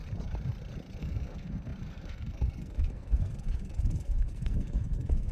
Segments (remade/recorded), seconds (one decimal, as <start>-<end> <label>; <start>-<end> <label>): 0.0-1.0 recorded; 1.0-5.3 remade